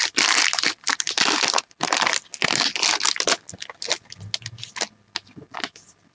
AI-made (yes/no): no